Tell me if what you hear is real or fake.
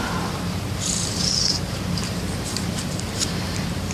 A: fake